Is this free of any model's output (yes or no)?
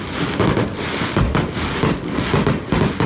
yes